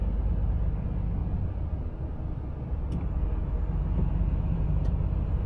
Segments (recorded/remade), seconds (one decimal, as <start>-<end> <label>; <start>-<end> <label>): 0.0-5.5 recorded